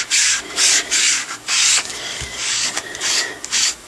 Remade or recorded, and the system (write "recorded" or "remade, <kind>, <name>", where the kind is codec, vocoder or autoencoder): remade, codec, DAC